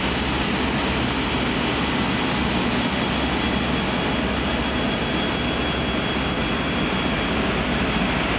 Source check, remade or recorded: recorded